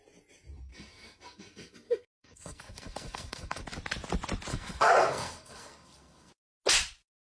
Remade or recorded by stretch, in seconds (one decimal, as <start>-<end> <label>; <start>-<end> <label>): 0.0-0.7 recorded; 0.7-3.6 remade; 3.6-4.5 recorded; 4.5-6.3 remade; 6.3-7.2 recorded